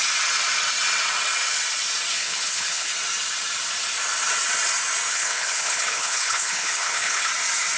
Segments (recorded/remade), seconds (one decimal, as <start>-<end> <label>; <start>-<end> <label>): 0.0-2.1 recorded; 2.1-2.9 remade; 2.9-5.1 recorded; 5.1-7.3 remade; 7.3-7.8 recorded